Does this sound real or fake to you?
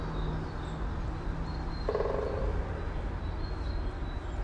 real